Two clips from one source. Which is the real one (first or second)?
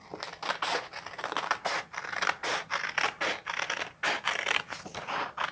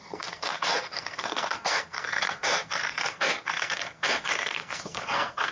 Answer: first